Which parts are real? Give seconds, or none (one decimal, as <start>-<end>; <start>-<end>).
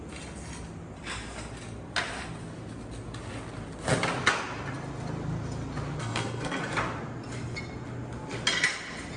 0.0-6.0; 6.6-9.2